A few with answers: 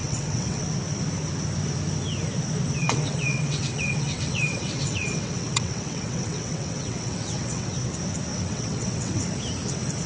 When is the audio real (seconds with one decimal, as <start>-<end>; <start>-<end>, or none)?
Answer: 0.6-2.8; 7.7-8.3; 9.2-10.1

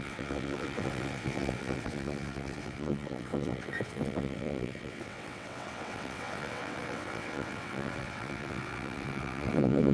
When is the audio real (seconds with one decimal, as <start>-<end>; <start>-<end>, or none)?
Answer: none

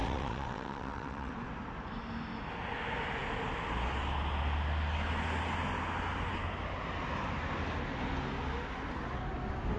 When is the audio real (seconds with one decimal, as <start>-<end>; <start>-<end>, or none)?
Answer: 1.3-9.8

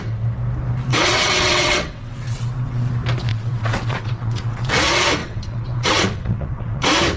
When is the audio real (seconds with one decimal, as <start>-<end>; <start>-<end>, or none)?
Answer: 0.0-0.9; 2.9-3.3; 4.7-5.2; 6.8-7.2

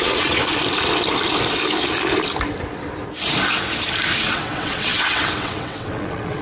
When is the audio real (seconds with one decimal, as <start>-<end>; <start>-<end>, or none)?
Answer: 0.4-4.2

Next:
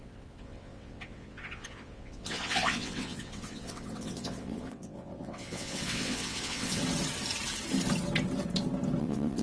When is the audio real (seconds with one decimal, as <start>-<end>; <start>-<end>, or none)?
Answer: 6.8-9.0

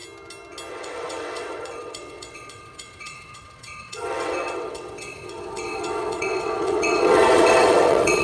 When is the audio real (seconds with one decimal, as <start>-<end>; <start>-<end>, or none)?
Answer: 0.0-0.7

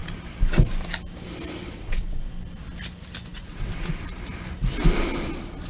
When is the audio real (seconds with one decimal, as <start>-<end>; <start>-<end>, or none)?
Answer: 0.0-1.6; 2.2-3.3; 3.8-5.7